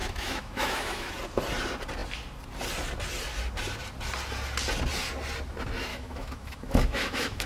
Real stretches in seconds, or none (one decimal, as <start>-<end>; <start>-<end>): 1.1-5.9